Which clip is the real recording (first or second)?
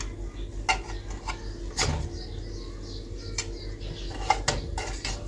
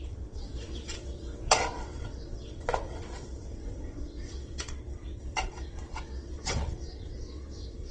first